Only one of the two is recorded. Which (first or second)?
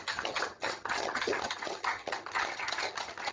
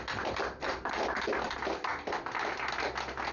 second